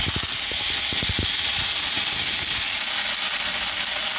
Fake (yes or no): no